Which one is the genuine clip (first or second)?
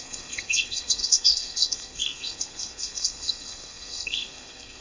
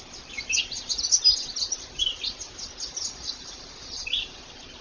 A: second